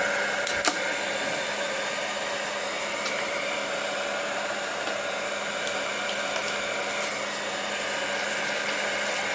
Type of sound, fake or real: real